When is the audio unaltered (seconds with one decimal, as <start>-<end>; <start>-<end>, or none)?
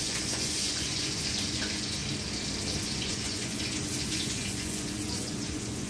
2.0-2.8